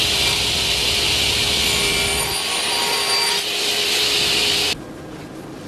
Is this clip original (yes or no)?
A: yes